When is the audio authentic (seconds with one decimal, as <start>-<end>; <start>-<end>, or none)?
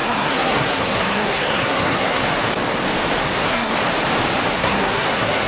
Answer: 2.2-3.2; 3.7-4.5